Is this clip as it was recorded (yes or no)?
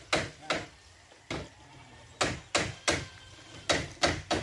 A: yes